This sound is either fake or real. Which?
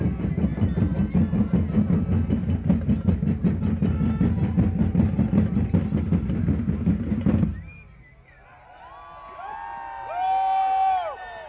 real